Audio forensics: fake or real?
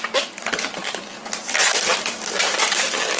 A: real